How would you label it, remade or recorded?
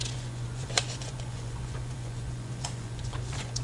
remade